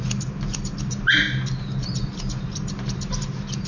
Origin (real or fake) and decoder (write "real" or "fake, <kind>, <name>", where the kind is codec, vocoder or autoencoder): real